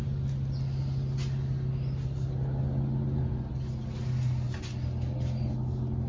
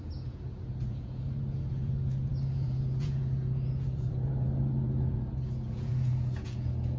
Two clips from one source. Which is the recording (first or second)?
first